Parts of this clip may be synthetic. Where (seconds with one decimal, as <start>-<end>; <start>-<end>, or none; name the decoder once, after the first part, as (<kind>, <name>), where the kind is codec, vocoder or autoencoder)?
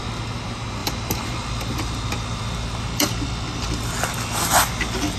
0.8-3.9 (vocoder, BigVGAN v2)